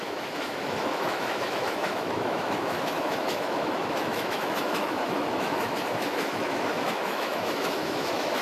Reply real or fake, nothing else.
fake